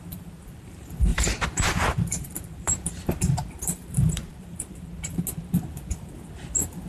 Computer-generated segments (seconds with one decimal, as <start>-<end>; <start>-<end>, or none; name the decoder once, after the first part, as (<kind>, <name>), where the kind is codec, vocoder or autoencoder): 1.1-5.2 (vocoder, BigVGAN v2)